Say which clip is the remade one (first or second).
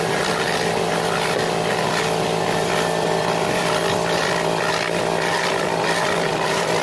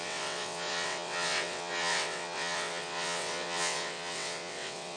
second